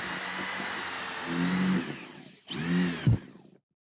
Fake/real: real